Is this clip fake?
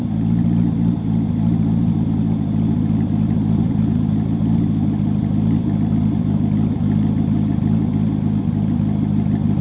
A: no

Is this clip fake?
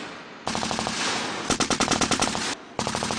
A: no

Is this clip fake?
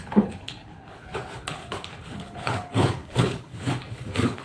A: yes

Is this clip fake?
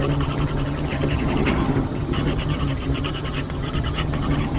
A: yes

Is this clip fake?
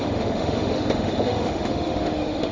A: yes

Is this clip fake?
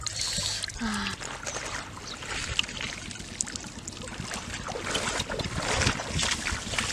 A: no